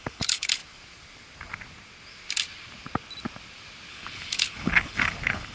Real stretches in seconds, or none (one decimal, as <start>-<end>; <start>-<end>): 0.6-3.9